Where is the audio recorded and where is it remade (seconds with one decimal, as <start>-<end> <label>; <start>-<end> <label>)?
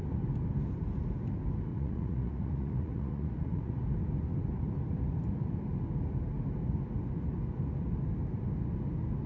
0.0-1.7 recorded; 1.7-3.7 remade; 3.7-9.3 recorded